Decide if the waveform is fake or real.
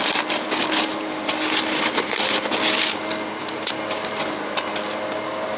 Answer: real